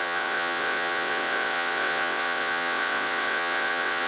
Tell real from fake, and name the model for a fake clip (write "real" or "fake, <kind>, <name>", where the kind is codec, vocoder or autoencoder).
fake, vocoder, WaveNeXt